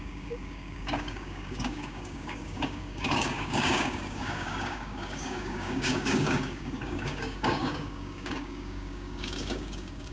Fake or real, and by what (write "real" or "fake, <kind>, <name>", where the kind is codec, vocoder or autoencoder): fake, codec, DAC